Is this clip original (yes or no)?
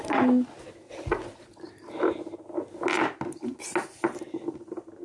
yes